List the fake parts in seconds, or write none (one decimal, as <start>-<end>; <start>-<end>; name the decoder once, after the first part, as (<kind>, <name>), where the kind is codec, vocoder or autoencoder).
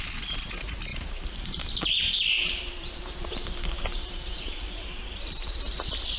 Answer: 0.9-1.6 (vocoder, BigVGAN v2); 2.4-4.5